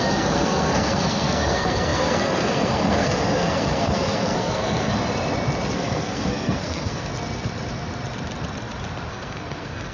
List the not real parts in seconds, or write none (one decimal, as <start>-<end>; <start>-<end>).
0.0-4.9; 5.7-7.1; 9.1-9.9